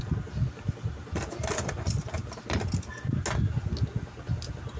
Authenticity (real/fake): real